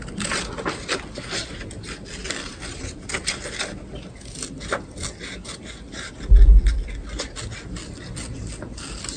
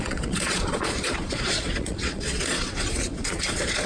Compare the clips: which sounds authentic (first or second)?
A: first